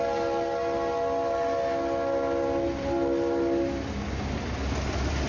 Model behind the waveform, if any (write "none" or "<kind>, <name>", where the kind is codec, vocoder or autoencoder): none